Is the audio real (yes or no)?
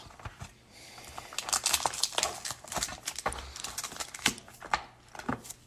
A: yes